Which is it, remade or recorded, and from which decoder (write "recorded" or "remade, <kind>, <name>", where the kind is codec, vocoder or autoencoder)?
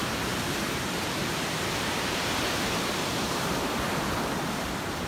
remade, vocoder, BigVGAN v2